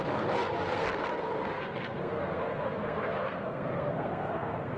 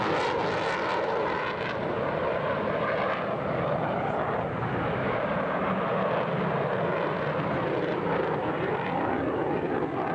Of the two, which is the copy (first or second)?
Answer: first